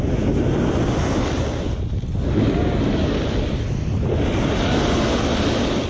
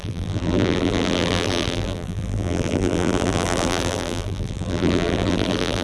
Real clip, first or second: first